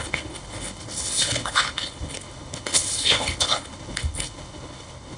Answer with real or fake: fake